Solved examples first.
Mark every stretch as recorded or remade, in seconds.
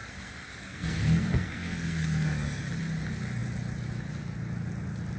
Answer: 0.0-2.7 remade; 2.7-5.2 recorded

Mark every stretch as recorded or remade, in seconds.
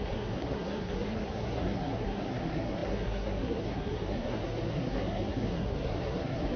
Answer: 0.0-6.6 remade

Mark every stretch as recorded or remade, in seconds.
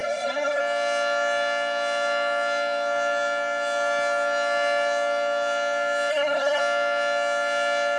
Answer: 0.0-0.6 remade; 0.6-6.1 recorded; 6.1-6.6 remade; 6.6-8.0 recorded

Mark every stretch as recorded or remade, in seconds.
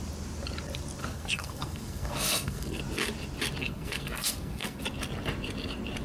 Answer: 0.0-1.0 recorded; 1.0-2.8 remade; 2.8-3.6 recorded; 3.6-4.8 remade; 4.8-6.0 recorded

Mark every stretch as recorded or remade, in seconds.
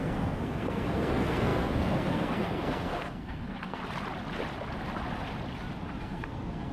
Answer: 0.0-3.8 remade; 3.8-6.0 recorded; 6.0-6.7 remade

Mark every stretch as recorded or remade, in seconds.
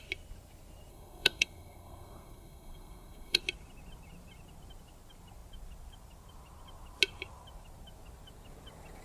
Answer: 0.0-0.9 recorded; 0.9-3.4 remade; 3.4-9.0 recorded